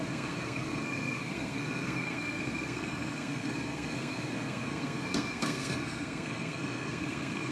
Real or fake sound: fake